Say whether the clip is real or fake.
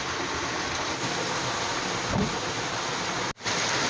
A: real